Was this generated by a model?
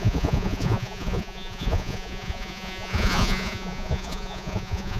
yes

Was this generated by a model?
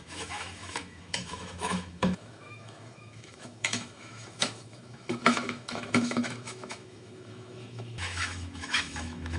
yes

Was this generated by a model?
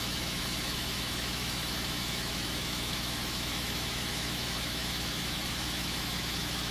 yes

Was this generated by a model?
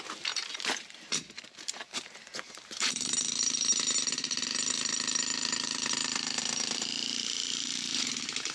yes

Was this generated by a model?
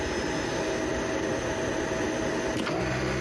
no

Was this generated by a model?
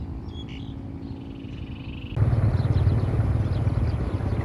no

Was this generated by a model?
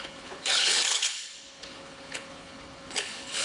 yes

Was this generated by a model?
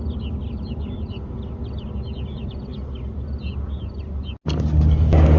no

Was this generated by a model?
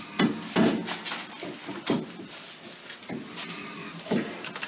no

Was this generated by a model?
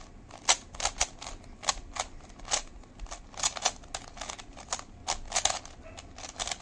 no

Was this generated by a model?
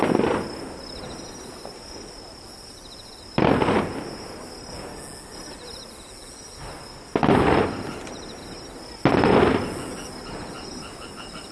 no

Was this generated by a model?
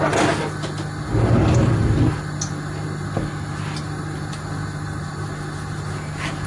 no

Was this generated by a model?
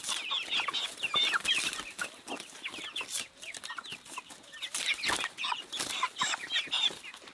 no